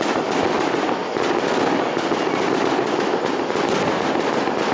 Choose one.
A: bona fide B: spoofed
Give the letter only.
A